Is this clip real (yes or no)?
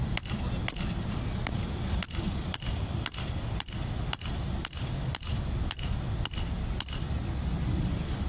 yes